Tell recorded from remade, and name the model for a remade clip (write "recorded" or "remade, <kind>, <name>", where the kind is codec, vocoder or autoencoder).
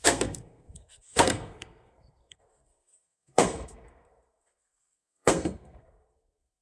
remade, codec, SNAC